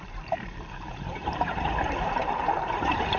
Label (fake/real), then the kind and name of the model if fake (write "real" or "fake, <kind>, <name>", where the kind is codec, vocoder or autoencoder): fake, vocoder, BigVGAN v2